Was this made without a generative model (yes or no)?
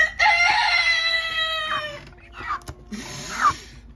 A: yes